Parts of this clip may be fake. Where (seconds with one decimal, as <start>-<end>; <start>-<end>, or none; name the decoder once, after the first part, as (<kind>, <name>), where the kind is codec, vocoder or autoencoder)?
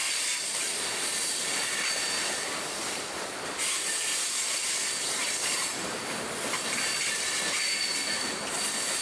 0.0-0.6 (vocoder, BigVGAN v2)